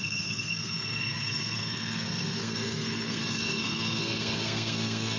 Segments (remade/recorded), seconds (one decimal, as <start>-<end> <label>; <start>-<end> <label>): 0.0-5.2 remade